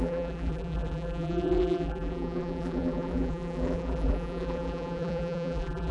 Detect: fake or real fake